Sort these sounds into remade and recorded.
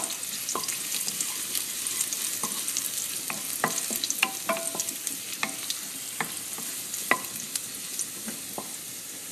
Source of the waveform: recorded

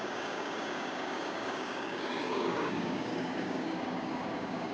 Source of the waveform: remade